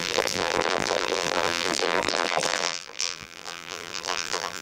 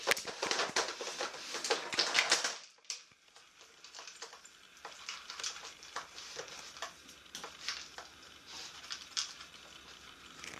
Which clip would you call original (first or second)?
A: second